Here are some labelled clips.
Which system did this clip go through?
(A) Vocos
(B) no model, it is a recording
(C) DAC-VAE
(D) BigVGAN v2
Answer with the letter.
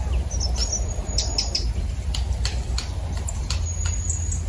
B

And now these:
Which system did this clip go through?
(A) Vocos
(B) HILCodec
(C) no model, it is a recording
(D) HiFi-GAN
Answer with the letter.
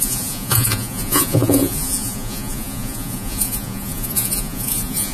A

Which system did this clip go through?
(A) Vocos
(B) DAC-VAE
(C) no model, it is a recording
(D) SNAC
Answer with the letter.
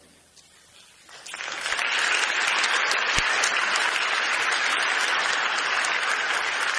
C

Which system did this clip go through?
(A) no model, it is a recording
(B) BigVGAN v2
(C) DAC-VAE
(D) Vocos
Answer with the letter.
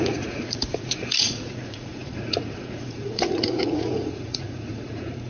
D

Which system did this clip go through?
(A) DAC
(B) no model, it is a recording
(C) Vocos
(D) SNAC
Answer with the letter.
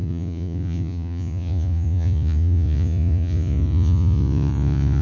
C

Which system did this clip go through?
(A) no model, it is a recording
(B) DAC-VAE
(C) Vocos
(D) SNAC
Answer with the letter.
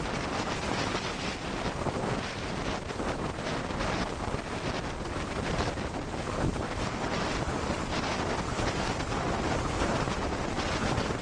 A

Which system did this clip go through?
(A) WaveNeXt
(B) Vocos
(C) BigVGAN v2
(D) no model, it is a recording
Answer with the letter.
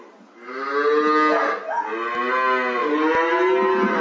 D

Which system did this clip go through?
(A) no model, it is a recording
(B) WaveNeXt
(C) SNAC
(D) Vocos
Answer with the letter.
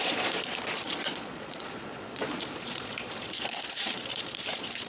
D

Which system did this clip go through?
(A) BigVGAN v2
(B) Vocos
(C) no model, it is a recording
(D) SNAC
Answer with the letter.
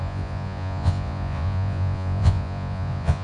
B